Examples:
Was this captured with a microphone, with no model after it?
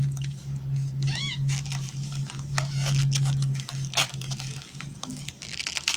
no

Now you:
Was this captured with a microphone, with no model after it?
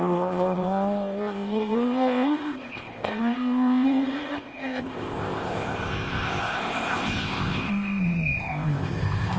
no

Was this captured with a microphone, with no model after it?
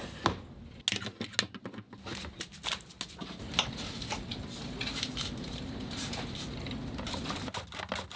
yes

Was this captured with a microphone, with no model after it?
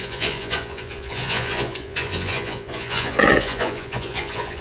no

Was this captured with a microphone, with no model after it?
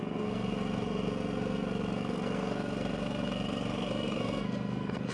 no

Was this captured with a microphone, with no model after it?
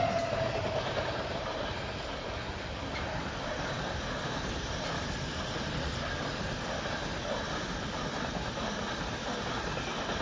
yes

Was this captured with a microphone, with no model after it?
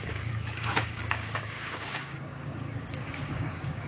no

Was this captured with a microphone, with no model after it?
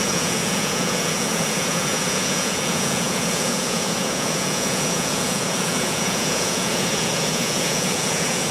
no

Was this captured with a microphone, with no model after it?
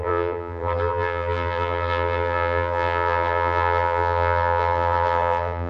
no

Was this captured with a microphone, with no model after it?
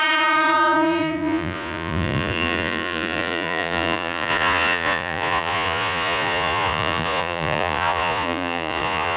no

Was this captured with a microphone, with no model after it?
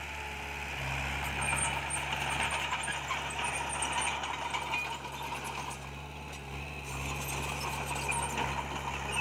yes